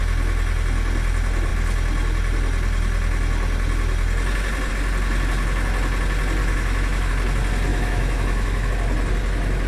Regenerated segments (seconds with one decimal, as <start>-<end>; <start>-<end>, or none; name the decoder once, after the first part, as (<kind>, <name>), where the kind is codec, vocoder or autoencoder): 6.4-7.1 (autoencoder, DAC-VAE); 7.7-8.7